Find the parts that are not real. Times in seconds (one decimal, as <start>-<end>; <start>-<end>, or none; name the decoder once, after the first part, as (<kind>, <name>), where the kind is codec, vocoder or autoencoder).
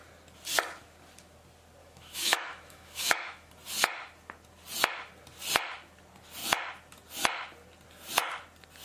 1.8-3.5 (autoencoder, DAC-VAE)